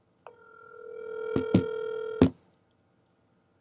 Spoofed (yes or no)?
no